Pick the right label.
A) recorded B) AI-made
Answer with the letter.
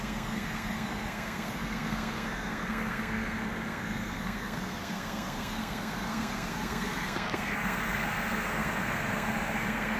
B